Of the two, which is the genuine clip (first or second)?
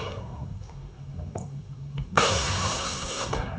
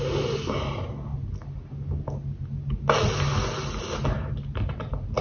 second